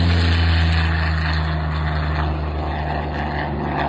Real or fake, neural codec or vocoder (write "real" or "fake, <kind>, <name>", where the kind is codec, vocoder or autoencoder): real